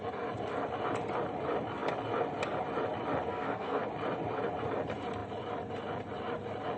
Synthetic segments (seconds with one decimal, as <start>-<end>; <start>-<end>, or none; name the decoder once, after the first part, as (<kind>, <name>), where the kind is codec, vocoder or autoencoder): 3.3-3.8 (codec, SNAC)